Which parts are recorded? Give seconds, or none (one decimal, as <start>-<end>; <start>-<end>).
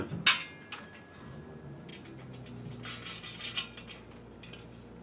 0.0-5.0